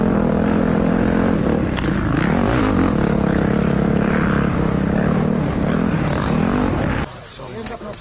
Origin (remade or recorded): recorded